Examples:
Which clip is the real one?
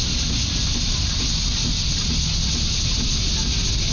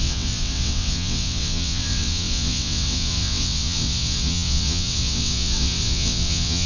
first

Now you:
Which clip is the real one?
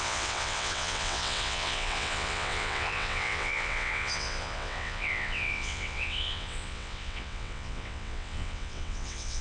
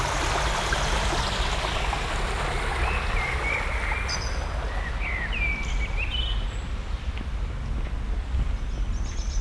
second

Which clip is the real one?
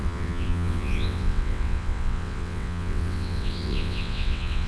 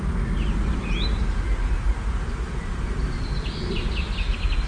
second